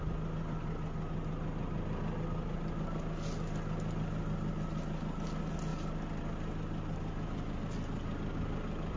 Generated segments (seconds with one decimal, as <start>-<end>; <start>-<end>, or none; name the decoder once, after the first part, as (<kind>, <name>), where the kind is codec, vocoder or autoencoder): none